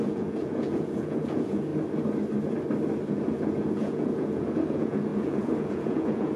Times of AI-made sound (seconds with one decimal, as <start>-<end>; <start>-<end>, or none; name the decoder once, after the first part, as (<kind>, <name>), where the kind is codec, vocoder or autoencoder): 0.0-1.7 (vocoder, Vocos); 3.1-6.4